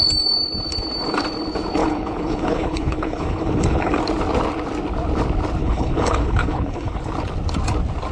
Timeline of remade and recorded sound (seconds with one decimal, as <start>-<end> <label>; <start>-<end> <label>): 0.0-1.8 recorded; 1.8-4.0 remade; 4.0-5.6 recorded; 5.6-7.1 remade; 7.1-8.1 recorded